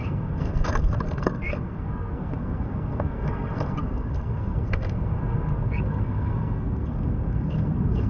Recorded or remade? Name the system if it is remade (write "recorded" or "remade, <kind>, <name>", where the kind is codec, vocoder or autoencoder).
remade, codec, SNAC